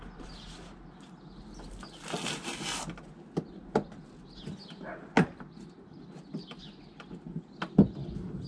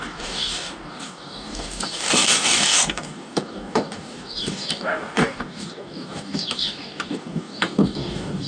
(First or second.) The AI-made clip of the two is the second